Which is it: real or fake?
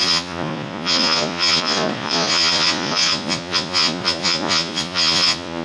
fake